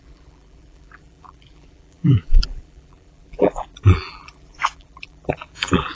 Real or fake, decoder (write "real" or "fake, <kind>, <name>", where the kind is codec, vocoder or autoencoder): fake, vocoder, BigVGAN v2